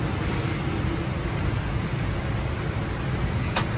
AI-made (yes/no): no